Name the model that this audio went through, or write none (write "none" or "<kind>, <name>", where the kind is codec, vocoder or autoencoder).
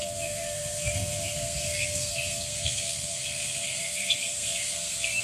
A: codec, SNAC